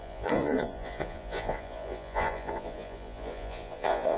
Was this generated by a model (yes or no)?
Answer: yes